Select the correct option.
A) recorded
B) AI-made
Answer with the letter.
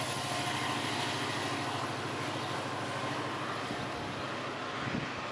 A